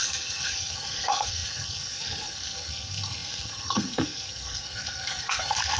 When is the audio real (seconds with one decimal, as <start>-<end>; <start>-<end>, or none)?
none